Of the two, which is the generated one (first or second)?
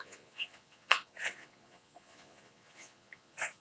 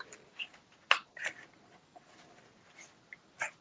first